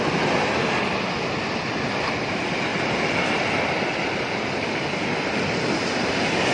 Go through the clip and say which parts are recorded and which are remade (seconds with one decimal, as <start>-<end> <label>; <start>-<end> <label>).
0.0-6.5 recorded